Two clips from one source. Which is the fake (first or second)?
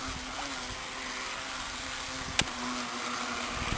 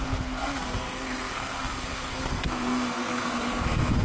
second